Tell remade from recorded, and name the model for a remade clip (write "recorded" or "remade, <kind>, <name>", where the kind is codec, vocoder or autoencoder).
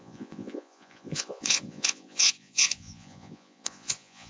remade, vocoder, Vocos